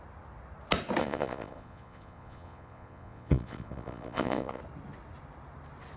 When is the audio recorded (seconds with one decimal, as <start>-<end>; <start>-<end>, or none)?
0.0-1.0; 4.6-6.0